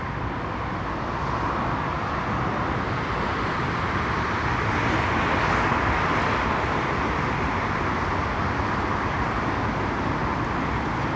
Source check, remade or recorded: recorded